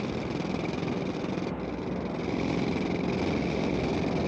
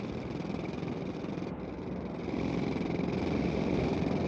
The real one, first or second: first